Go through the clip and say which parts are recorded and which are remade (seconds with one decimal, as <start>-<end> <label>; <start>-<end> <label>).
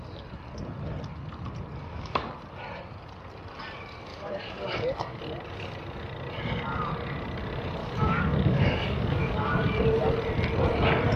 0.0-1.8 recorded; 1.8-2.3 remade; 2.3-4.1 recorded; 4.1-5.2 remade; 5.2-7.8 recorded; 7.8-9.6 remade; 9.6-11.2 recorded